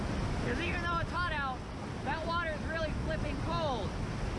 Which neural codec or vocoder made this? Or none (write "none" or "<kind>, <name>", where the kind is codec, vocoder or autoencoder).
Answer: none